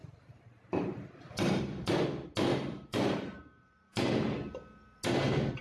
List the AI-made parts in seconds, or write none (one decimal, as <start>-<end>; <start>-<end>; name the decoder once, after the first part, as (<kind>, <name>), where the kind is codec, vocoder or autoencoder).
0.0-2.0 (vocoder, BigVGAN v2); 2.5-4.1